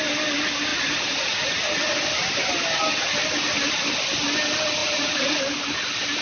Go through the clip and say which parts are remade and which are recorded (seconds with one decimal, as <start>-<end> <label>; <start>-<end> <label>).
0.0-0.7 recorded; 0.7-2.1 remade; 2.1-4.8 recorded; 4.8-5.4 remade; 5.4-6.2 recorded